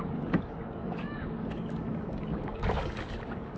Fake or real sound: fake